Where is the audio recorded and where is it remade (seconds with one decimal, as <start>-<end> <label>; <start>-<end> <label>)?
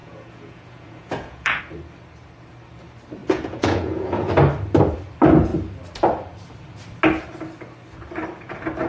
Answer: 0.0-1.6 remade; 1.6-3.2 recorded; 3.2-4.3 remade; 4.3-8.9 recorded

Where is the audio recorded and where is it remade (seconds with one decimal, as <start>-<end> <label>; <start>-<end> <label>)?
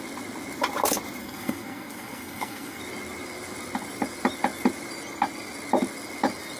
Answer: 0.0-1.2 recorded; 1.2-2.8 remade; 2.8-6.6 recorded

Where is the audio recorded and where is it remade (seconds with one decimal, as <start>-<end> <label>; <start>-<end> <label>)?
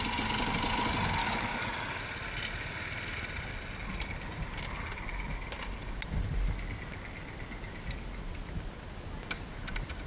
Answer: 0.0-1.2 recorded; 1.2-2.0 remade; 2.0-10.1 recorded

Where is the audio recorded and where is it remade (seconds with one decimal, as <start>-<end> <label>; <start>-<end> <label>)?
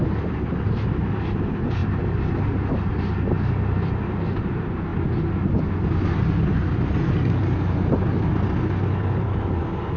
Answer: 0.0-10.0 recorded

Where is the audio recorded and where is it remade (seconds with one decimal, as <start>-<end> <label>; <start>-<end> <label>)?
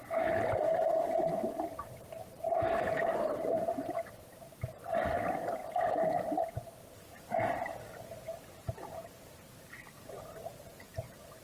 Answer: 0.0-1.8 recorded; 1.8-4.8 remade; 4.8-11.4 recorded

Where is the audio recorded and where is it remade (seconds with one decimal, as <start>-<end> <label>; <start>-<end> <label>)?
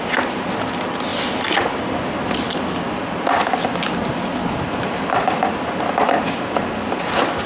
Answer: 0.0-7.5 recorded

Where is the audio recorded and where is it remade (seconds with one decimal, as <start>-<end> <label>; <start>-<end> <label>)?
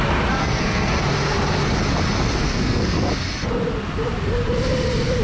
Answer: 0.0-0.4 recorded; 0.4-1.0 remade; 1.0-2.5 recorded; 2.5-3.1 remade; 3.1-5.2 recorded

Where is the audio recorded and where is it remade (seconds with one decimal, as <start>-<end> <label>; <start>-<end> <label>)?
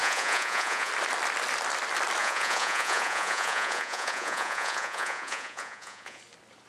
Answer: 0.0-0.9 remade; 0.9-2.2 recorded; 2.2-6.2 remade; 6.2-6.7 recorded